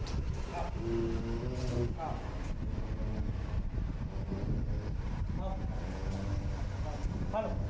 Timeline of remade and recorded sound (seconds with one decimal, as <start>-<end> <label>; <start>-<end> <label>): 0.0-1.6 recorded; 1.6-5.3 remade; 5.3-7.7 recorded